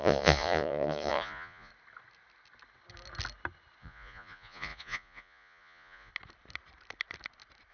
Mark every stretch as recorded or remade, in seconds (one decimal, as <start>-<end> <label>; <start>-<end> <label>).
0.0-1.7 remade; 1.7-3.8 recorded; 3.8-6.1 remade; 6.1-7.7 recorded